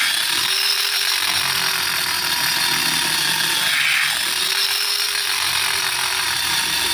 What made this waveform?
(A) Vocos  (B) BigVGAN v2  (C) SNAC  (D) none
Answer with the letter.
D